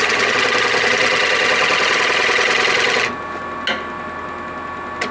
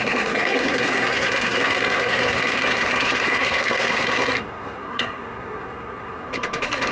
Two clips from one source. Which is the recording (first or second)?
first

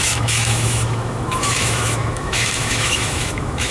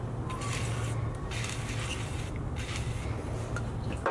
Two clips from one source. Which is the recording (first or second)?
second